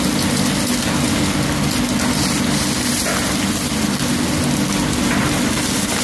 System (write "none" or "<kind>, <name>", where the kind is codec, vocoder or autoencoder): none